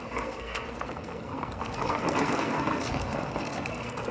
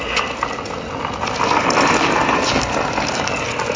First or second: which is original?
second